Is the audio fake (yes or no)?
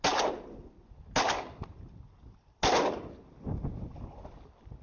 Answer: no